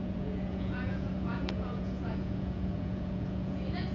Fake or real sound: fake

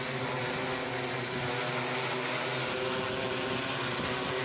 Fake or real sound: real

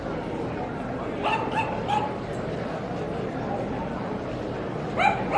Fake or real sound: real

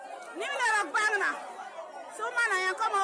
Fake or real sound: real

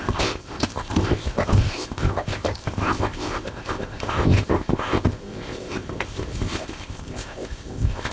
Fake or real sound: fake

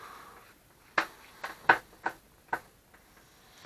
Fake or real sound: real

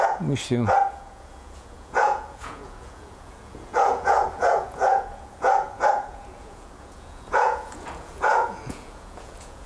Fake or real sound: fake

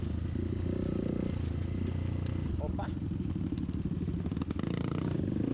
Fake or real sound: real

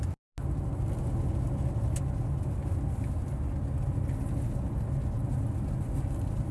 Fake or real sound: real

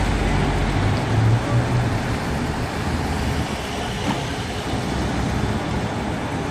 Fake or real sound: real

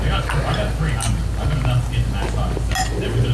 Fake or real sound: real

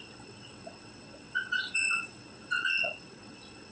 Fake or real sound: fake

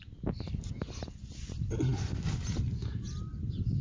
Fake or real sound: real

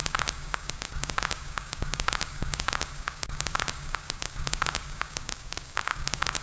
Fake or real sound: fake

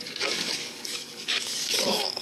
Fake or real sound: fake